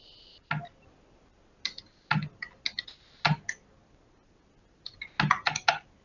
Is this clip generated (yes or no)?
no